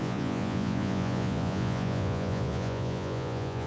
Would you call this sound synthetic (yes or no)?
yes